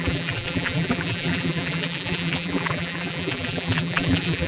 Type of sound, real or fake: fake